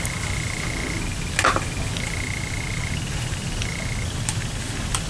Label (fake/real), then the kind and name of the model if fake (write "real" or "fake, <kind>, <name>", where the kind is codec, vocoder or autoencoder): real